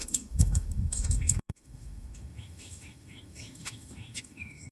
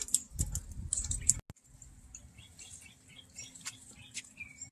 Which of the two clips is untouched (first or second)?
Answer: second